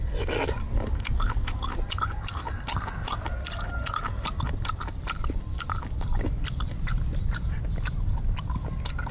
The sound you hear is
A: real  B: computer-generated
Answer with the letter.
A